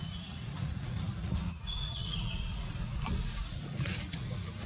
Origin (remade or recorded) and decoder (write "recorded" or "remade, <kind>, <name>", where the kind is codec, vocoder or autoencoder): remade, vocoder, Vocos